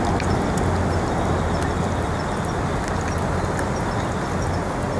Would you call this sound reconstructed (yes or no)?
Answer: no